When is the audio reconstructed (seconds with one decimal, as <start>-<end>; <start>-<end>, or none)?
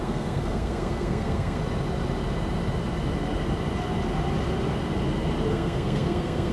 0.0-1.6; 5.5-6.5